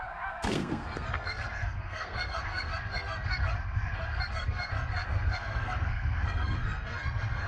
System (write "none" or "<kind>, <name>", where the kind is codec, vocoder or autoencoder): codec, SNAC